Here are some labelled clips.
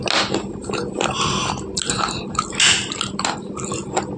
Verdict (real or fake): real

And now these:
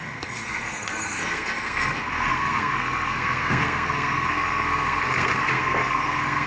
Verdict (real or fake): fake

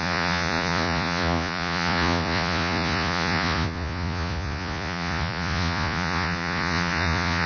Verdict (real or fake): fake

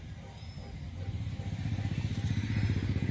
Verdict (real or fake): fake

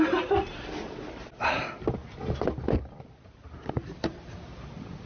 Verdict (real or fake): real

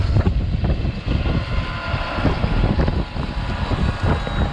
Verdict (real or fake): real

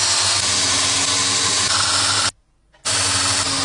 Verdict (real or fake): real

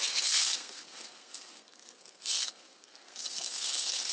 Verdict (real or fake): fake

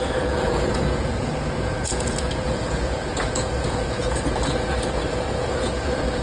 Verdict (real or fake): fake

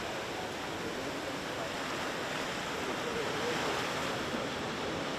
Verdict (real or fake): real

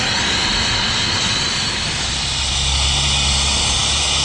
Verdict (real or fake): real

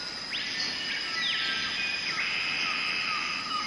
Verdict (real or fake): real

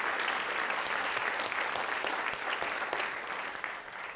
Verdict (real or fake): real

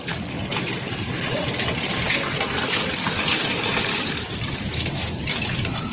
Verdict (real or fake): real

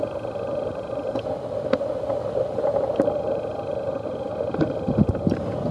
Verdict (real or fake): real